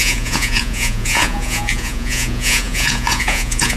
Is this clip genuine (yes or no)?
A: no